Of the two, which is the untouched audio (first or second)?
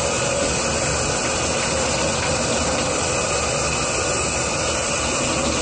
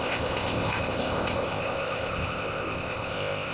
first